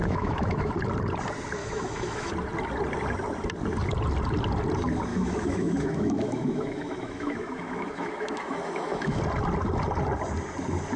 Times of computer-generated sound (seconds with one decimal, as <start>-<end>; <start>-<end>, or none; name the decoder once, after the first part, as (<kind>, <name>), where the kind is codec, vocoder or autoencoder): 0.0-0.7 (autoencoder, DAC-VAE); 1.6-2.3; 5.1-9.2